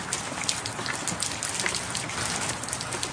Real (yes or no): yes